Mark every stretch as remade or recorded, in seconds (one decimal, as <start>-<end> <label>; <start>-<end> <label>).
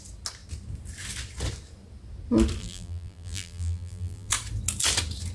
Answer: 0.0-2.6 recorded; 2.6-4.3 remade; 4.3-5.3 recorded